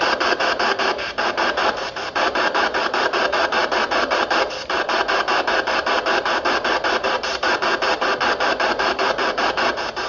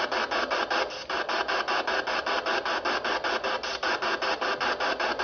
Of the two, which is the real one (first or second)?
second